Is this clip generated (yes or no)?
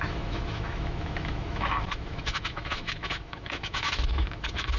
yes